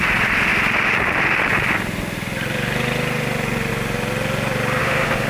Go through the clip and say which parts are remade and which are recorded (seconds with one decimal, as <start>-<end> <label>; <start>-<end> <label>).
0.0-4.8 recorded; 4.8-5.3 remade